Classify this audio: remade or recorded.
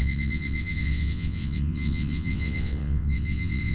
remade